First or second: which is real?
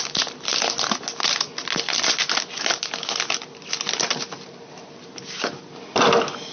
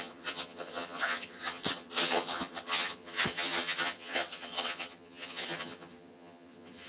first